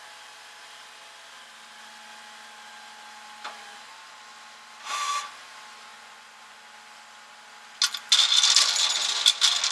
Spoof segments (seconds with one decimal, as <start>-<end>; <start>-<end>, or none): 5.9-6.6